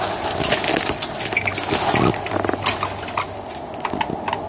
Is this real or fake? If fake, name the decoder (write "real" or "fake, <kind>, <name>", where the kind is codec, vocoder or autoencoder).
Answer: real